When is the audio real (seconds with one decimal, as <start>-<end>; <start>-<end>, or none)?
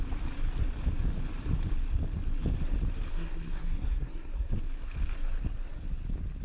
0.0-3.1; 4.5-6.4